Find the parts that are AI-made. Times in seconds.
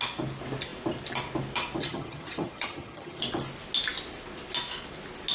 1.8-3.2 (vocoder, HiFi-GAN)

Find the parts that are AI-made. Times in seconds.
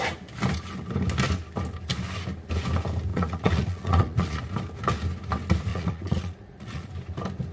3.1-4.4 (vocoder, Vocos); 5.7-6.9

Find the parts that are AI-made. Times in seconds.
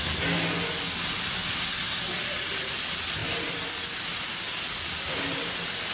none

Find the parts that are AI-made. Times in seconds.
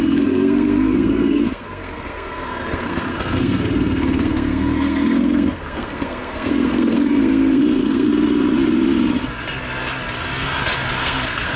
0.0-8.1 (codec, SNAC); 11.0-11.6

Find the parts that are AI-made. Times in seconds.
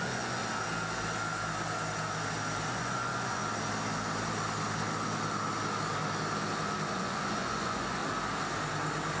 0.0-0.4 (vocoder, Vocos); 2.7-3.4; 6.9-8.0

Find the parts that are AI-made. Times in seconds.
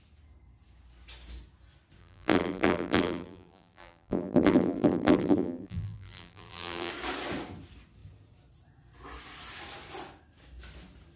2.0-6.9 (vocoder, BigVGAN v2)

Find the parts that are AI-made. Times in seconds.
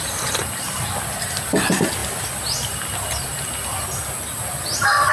0.4-1.3 (vocoder, BigVGAN v2)